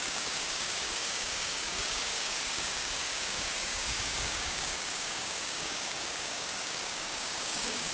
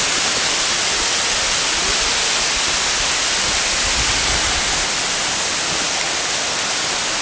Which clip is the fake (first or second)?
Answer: first